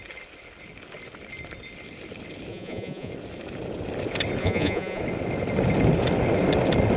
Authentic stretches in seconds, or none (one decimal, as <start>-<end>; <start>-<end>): 0.0-2.5; 3.1-4.4; 5.0-7.0